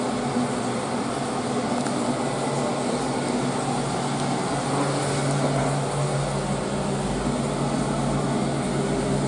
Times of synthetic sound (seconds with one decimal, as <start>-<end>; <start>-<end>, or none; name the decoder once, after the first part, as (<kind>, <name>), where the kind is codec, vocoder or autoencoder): none